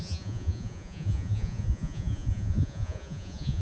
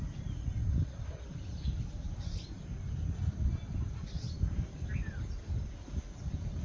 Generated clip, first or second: first